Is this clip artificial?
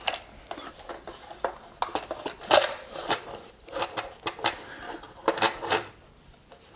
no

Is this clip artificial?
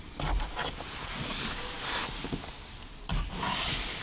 no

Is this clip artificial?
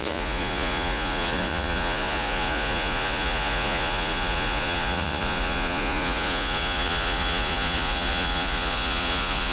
yes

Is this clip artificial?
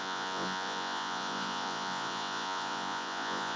yes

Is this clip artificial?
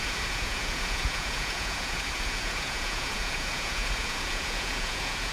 yes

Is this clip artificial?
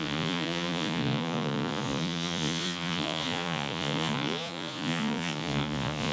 yes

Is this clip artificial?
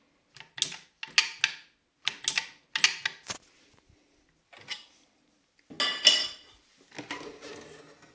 no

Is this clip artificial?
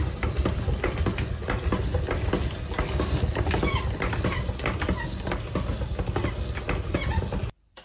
no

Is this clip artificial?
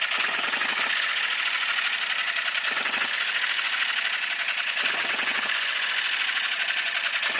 yes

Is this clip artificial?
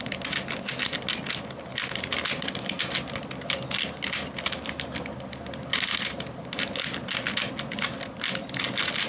no